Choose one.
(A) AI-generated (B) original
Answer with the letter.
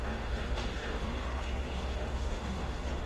A